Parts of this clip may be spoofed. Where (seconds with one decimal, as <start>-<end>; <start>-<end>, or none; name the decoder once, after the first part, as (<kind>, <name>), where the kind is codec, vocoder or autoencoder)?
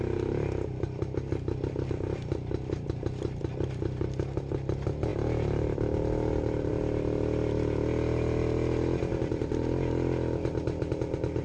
none